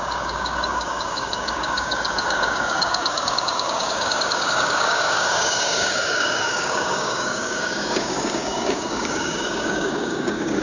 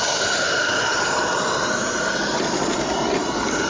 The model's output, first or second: first